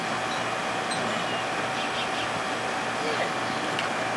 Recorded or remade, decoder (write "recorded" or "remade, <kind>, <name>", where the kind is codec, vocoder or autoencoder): recorded